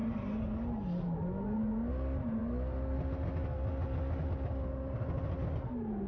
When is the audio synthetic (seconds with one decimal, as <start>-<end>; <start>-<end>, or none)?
none